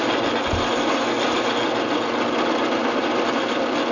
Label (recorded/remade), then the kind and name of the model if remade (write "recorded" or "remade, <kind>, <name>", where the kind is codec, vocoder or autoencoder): recorded